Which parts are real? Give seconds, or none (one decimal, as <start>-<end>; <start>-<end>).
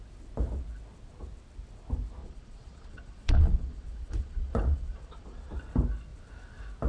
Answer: 0.0-2.2; 5.5-6.9